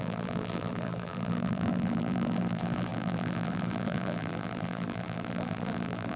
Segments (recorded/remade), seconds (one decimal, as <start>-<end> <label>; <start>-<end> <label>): 0.0-6.2 remade